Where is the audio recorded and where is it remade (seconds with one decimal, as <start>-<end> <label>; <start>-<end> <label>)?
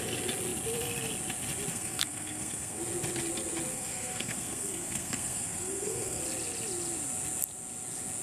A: 0.0-1.7 recorded; 1.7-2.8 remade; 2.8-3.7 recorded; 3.7-6.2 remade; 6.2-8.2 recorded